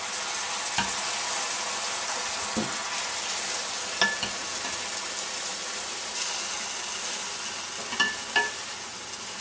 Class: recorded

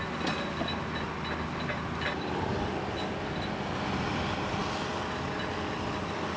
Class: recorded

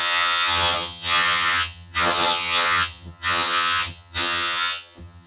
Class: remade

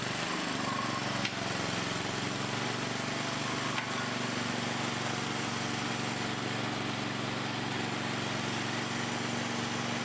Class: recorded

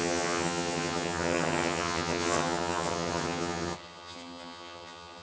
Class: remade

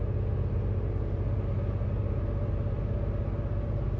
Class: recorded